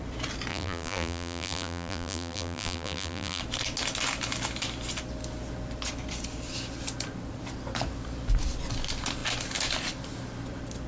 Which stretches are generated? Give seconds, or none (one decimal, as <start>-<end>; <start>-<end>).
0.5-3.4